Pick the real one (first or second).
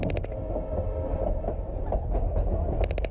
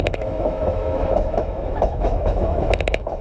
first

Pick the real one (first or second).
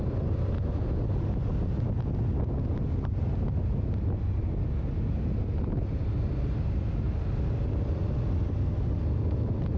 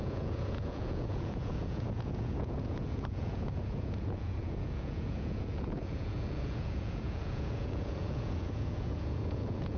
first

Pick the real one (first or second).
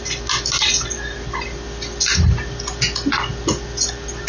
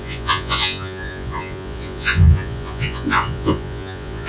first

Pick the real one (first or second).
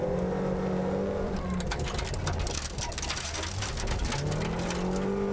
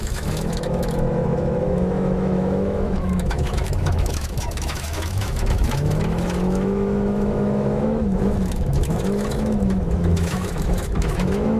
first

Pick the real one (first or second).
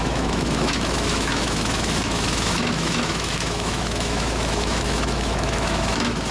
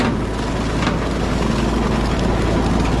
second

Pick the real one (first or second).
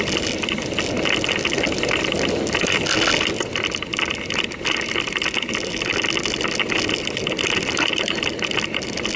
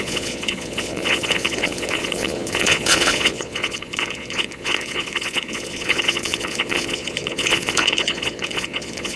first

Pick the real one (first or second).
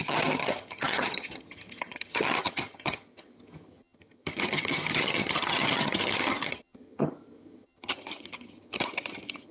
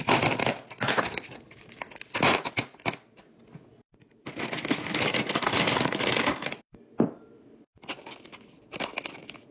second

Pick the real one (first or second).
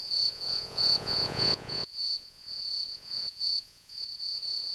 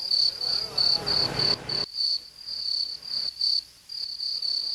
second